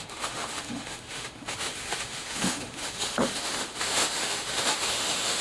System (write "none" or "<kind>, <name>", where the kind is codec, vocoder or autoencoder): autoencoder, DAC-VAE